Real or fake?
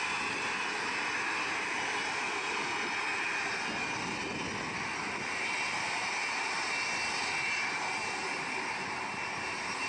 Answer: real